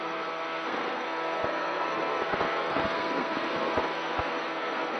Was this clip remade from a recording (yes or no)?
yes